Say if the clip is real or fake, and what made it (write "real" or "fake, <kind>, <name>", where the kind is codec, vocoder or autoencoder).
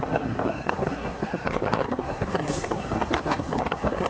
fake, codec, SNAC